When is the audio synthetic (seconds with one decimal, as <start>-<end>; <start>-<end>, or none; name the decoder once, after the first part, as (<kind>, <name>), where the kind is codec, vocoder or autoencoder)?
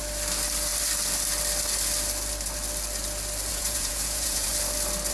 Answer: 3.5-4.5 (vocoder, Vocos)